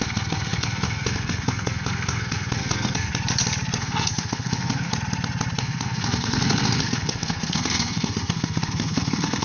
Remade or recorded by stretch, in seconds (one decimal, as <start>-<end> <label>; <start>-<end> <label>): 0.0-3.1 remade; 3.1-3.8 recorded; 3.8-4.9 remade; 4.9-5.6 recorded; 5.6-9.4 remade